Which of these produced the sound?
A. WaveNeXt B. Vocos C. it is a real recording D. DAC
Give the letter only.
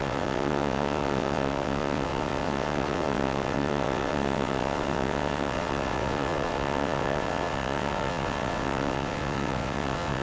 A